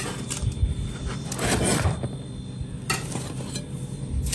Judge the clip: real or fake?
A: real